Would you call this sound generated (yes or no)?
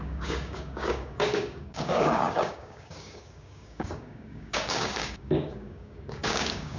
yes